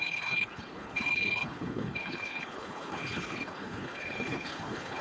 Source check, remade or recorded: remade